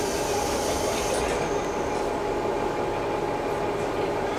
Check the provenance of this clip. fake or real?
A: real